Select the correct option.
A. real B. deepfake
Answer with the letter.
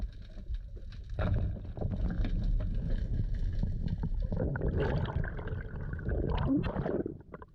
A